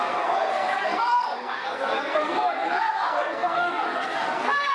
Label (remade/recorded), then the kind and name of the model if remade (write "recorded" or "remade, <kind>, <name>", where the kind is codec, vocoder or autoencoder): remade, codec, SNAC